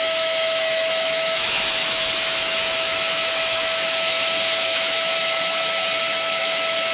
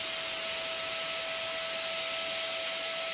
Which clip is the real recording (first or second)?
second